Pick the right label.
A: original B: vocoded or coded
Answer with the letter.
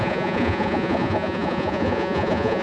B